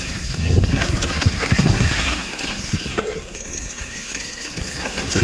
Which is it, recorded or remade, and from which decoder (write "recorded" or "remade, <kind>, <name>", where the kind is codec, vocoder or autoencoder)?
remade, codec, SNAC